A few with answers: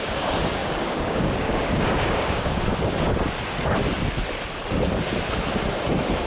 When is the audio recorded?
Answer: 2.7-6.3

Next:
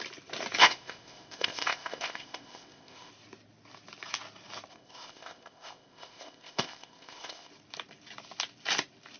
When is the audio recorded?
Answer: 0.0-0.6; 3.1-4.7; 7.5-9.2

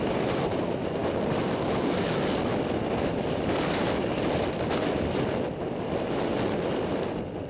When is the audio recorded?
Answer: 0.0-7.5

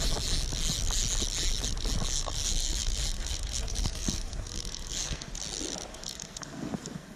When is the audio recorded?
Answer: 0.0-2.1; 5.3-5.9